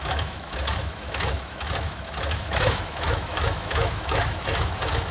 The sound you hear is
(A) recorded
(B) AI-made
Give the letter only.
B